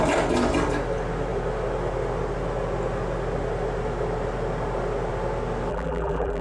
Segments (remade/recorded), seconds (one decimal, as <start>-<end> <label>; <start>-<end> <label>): 0.0-5.7 recorded; 5.7-6.4 remade